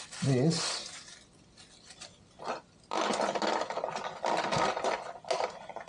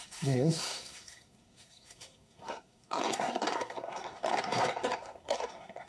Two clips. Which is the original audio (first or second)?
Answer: first